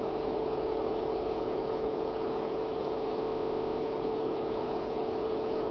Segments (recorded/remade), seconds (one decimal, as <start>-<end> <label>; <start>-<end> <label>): 0.0-3.2 remade; 3.2-3.8 recorded; 3.8-5.7 remade